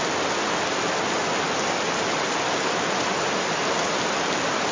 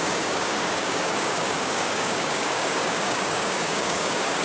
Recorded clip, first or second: first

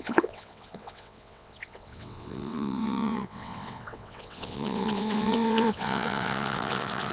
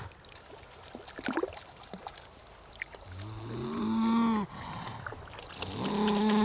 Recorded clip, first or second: second